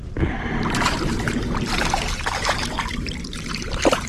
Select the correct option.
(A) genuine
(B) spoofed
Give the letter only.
B